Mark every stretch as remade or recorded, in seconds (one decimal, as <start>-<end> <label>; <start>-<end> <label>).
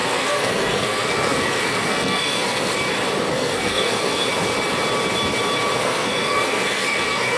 0.0-2.7 remade; 2.7-3.3 recorded; 3.3-4.3 remade; 4.3-5.8 recorded; 5.8-7.4 remade